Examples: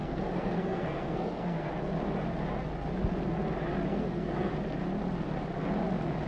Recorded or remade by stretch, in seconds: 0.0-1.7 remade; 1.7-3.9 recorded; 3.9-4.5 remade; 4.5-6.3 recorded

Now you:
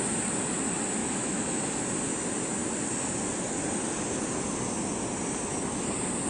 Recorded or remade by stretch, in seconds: 0.0-1.0 recorded; 1.0-1.8 remade; 1.8-6.3 recorded